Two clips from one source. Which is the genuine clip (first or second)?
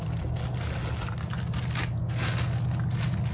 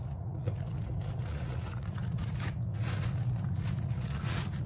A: first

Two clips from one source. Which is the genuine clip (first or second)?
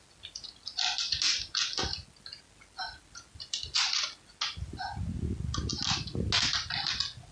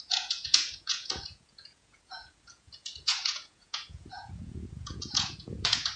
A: first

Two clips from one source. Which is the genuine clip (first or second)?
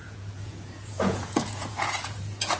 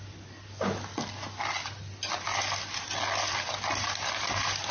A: second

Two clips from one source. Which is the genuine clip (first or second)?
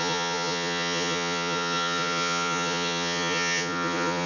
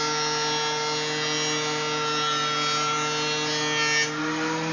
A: second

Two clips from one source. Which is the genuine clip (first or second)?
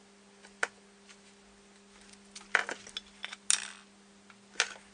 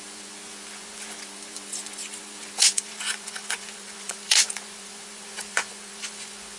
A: first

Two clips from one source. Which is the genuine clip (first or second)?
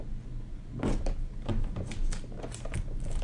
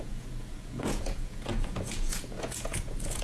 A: first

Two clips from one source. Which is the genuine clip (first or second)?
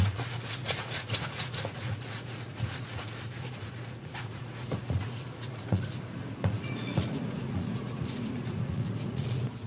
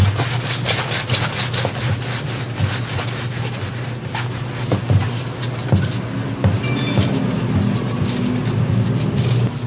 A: second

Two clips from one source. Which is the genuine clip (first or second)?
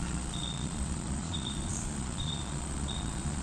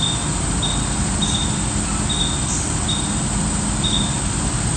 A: second